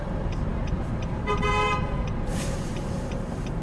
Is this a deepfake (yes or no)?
yes